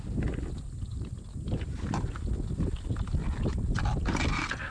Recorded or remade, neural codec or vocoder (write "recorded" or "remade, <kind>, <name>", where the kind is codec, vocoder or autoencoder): recorded